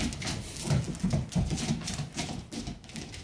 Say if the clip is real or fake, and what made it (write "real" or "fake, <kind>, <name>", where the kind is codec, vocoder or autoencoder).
real